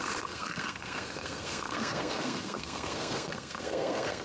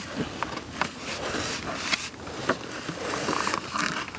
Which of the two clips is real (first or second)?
second